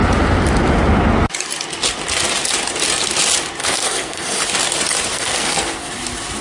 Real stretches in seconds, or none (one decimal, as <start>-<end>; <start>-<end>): 0.0-3.6; 4.4-5.1; 5.9-6.4